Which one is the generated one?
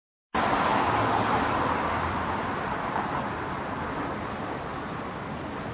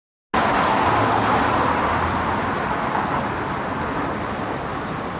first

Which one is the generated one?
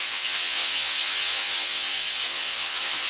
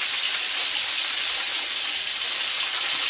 first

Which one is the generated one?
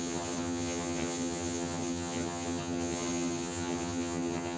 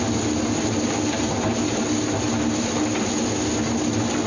first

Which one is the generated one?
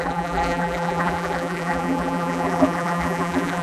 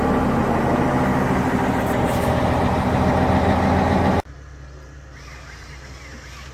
first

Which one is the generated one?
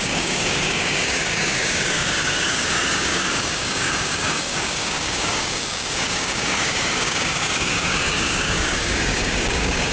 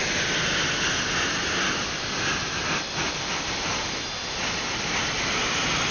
first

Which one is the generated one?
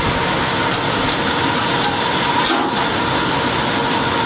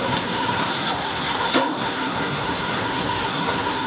second